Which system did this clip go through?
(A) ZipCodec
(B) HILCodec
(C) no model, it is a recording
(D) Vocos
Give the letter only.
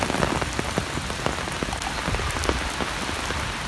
C